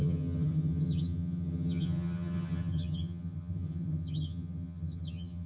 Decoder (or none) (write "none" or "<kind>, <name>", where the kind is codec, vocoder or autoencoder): vocoder, HiFi-GAN